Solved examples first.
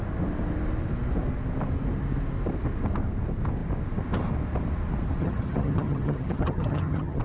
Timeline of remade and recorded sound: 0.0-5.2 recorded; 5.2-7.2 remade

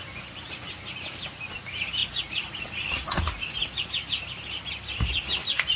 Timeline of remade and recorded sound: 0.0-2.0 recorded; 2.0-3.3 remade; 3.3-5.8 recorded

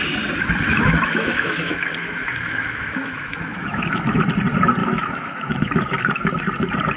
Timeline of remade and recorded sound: 0.0-0.7 recorded; 0.7-4.2 remade; 4.2-4.8 recorded; 4.8-6.3 remade; 6.3-7.0 recorded

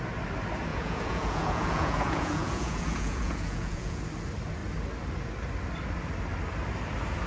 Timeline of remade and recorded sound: 0.0-0.7 recorded; 0.7-4.0 remade; 4.0-7.3 recorded